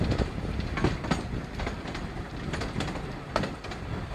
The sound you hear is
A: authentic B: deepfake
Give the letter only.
A